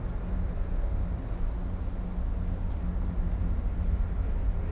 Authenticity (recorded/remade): recorded